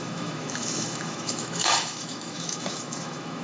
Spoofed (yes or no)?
yes